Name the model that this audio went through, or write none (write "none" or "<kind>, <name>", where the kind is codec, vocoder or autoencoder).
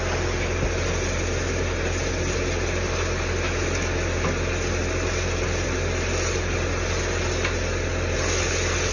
none